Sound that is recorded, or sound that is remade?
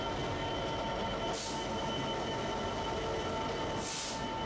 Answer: recorded